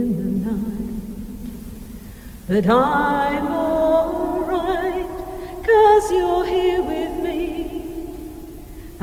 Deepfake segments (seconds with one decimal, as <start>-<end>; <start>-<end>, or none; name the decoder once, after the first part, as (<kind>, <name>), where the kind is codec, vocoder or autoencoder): 4.3-6.1 (vocoder, BigVGAN v2)